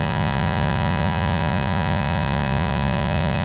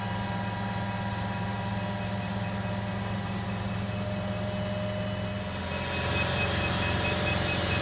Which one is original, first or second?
second